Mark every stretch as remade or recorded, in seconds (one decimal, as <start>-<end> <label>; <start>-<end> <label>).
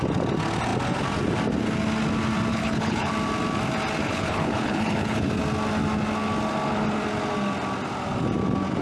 0.0-2.5 recorded; 2.5-3.1 remade; 3.1-4.0 recorded; 4.0-5.3 remade; 5.3-8.8 recorded